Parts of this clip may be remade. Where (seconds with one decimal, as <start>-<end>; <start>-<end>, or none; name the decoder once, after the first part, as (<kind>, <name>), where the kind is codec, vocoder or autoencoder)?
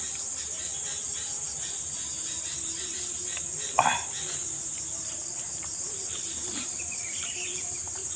0.0-0.7 (vocoder, BigVGAN v2); 5.1-8.2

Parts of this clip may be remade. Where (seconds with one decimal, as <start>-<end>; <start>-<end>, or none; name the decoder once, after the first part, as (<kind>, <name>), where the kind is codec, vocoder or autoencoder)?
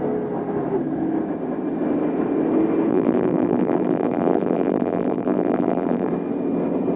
2.9-6.1 (vocoder, BigVGAN v2)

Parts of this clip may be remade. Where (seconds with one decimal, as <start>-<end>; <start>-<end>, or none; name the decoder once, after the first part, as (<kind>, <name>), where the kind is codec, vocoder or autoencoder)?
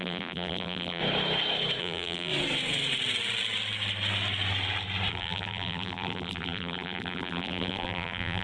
0.0-1.0 (vocoder, BigVGAN v2); 1.8-2.3; 5.1-8.4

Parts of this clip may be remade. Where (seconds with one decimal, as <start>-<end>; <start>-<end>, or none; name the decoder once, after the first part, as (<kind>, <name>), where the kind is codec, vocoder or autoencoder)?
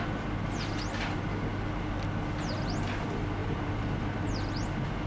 3.4-4.0 (vocoder, BigVGAN v2)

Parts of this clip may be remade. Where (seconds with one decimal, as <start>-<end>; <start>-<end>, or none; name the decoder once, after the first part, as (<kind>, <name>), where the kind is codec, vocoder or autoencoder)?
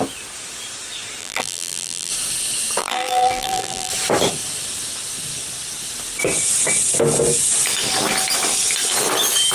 1.2-2.1 (vocoder, BigVGAN v2); 2.8-3.9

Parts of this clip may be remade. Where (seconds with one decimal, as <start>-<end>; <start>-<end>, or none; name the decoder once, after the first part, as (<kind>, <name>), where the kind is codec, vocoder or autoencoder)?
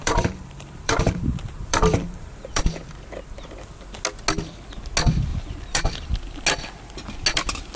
0.0-2.6 (vocoder, BigVGAN v2); 5.3-6.1